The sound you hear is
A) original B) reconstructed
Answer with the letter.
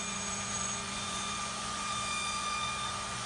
B